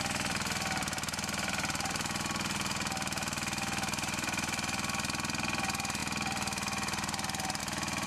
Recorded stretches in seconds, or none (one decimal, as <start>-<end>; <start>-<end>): none